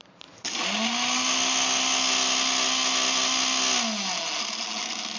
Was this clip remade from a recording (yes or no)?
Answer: no